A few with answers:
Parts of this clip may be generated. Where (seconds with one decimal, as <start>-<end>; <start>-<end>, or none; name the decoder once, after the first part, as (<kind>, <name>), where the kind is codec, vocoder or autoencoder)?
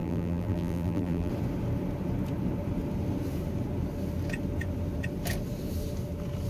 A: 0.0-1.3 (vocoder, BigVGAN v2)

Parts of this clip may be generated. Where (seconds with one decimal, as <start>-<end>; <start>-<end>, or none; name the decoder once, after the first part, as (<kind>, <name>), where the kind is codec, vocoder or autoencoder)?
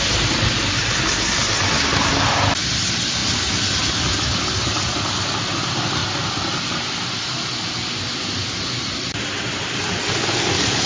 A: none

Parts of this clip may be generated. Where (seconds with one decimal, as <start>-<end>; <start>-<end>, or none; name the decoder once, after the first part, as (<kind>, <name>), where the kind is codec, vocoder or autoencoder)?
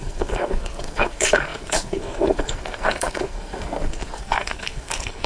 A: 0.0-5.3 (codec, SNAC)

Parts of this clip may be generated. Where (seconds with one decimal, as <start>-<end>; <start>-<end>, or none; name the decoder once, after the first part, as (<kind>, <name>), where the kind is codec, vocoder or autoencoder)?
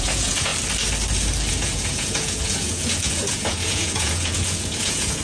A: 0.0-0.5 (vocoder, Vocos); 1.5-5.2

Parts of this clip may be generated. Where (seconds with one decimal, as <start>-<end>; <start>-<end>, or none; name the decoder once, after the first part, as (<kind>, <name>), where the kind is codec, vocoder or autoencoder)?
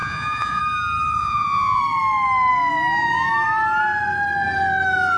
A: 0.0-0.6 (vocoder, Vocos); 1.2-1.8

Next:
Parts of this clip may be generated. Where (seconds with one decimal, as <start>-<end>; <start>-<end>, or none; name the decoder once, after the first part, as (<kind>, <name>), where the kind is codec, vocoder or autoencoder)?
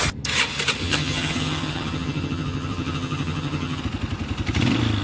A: 0.8-3.8 (vocoder, HiFi-GAN)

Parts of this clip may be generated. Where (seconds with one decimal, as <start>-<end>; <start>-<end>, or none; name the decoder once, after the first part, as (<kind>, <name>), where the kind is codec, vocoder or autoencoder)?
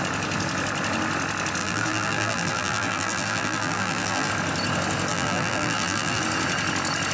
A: 1.6-4.3 (vocoder, BigVGAN v2); 5.1-6.2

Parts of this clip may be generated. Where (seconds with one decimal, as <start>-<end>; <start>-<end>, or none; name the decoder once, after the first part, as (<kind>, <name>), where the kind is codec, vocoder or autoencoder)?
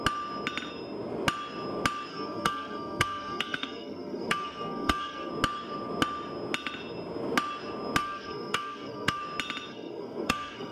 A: 2.1-5.3 (codec, SNAC); 8.0-9.2; 9.7-10.7